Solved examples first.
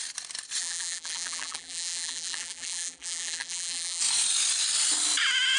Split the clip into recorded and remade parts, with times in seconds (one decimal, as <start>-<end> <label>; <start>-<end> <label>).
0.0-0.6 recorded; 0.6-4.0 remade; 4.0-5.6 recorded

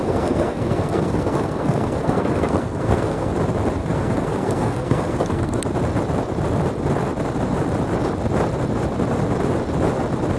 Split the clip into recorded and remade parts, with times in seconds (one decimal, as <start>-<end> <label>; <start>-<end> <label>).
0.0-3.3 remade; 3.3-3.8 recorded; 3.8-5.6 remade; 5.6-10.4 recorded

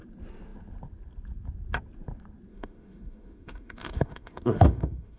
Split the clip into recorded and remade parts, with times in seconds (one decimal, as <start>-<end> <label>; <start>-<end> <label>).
0.0-2.5 recorded; 2.5-5.2 remade